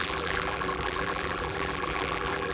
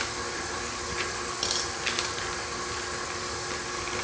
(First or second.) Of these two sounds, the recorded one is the second